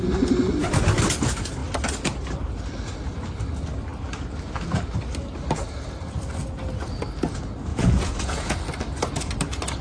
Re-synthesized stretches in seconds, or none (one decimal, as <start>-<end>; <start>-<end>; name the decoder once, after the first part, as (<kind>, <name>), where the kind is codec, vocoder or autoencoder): 7.7-8.6 (vocoder, Vocos)